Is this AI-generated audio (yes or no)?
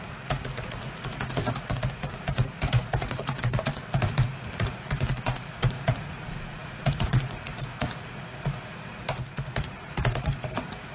yes